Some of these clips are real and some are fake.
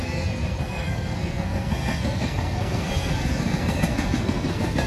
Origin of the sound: fake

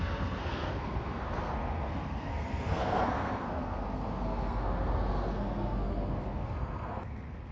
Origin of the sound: fake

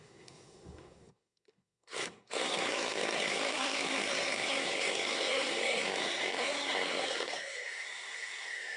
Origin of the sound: fake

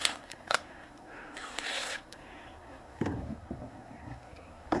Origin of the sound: fake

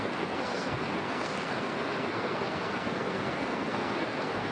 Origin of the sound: fake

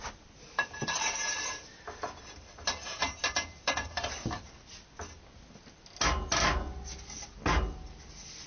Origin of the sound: real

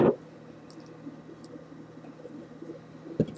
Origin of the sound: real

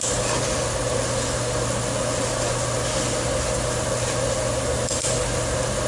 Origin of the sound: real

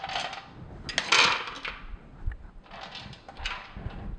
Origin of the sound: real